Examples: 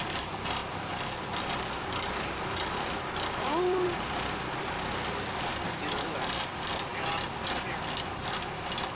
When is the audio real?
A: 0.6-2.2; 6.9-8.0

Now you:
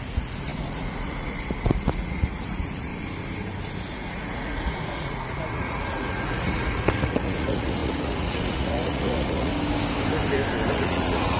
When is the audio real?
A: 2.9-3.8; 9.5-10.7